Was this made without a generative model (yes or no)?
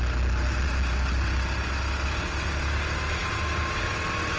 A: yes